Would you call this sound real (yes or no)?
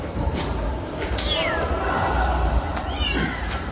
no